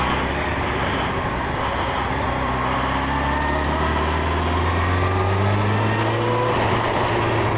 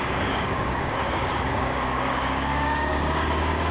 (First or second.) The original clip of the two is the first